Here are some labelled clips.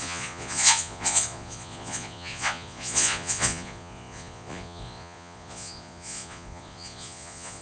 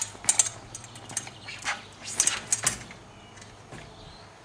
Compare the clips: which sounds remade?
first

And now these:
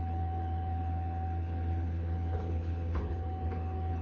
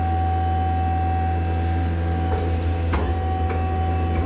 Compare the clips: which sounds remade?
first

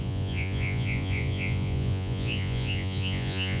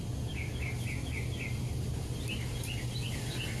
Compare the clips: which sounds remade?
first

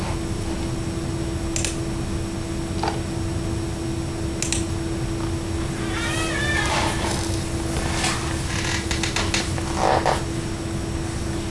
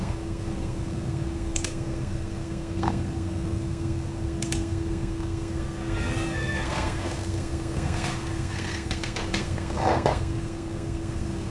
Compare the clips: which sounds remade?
second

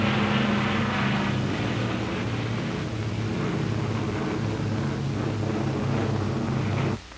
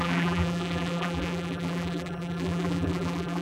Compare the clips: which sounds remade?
second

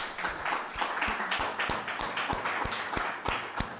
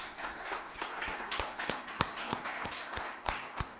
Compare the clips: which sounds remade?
second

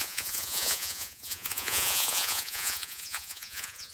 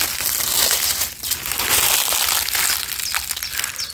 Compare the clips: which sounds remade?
first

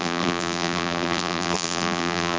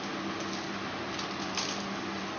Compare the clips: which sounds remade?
first